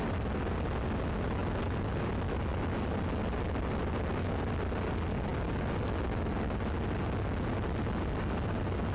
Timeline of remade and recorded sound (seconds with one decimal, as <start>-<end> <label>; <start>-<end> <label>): 0.0-8.9 recorded